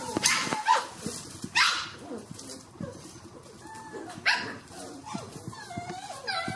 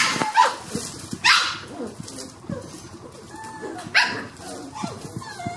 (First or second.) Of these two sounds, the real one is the second